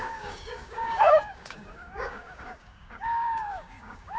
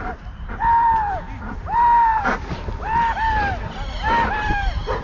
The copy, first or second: first